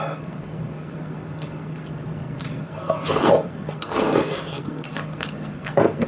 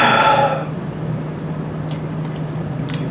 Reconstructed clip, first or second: first